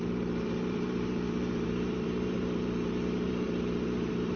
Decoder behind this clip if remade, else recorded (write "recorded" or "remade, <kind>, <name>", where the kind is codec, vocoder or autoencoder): remade, vocoder, BigVGAN v2